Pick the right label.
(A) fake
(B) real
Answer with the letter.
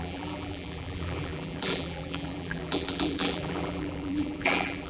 A